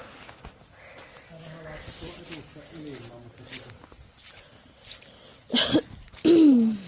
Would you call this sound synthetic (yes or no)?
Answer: no